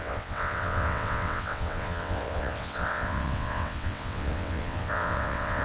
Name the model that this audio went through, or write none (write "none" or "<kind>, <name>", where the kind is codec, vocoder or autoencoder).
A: vocoder, WaveNeXt